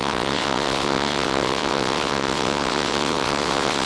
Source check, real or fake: fake